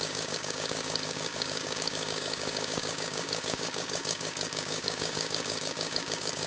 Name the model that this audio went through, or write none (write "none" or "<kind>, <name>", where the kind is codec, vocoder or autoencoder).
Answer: codec, DAC